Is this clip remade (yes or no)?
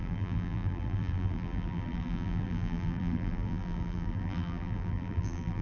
yes